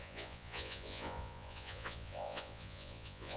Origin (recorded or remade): remade